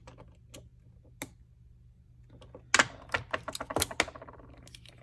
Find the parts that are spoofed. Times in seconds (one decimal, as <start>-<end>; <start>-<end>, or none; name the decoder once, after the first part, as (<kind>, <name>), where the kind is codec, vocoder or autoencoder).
none